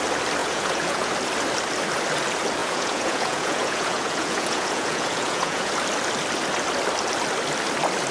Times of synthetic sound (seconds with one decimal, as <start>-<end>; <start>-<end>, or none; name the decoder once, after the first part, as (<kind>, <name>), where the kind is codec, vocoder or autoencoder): 0.4-1.1 (vocoder, Vocos); 2.6-5.7